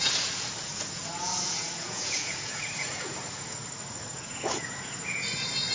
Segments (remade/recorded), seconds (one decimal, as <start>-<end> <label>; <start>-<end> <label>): 0.0-3.6 remade; 3.6-4.2 recorded; 4.2-5.7 remade